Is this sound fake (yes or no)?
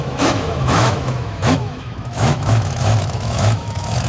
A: yes